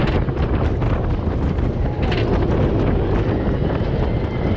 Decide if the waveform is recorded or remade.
recorded